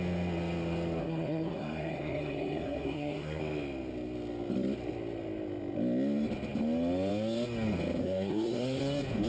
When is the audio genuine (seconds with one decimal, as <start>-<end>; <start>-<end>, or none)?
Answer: 0.0-1.0; 3.4-8.0; 8.8-9.3